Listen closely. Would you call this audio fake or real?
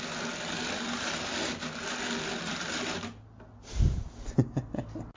real